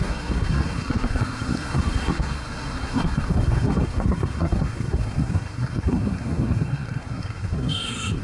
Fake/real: fake